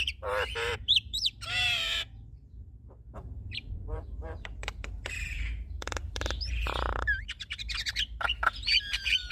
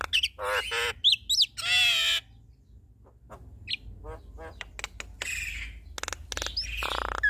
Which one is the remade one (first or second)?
first